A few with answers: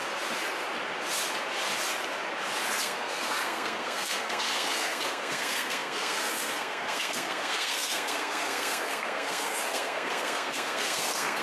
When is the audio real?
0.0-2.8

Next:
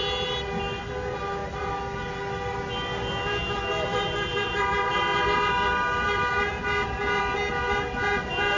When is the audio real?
0.0-3.9; 4.6-8.6

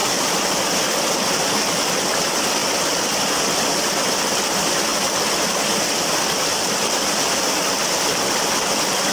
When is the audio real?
0.6-9.1